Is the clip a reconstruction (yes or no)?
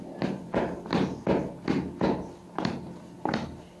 no